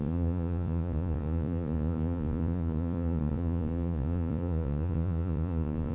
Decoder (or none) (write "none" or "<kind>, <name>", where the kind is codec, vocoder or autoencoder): vocoder, Vocos